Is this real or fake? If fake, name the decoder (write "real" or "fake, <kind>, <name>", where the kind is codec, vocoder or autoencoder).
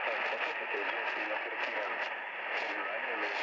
real